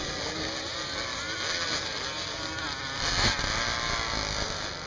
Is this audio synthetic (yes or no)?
no